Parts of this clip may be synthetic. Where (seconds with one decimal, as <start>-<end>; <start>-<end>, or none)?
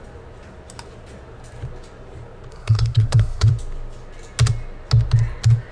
2.5-3.5